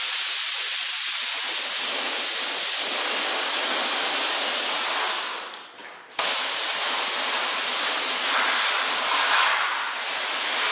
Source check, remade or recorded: recorded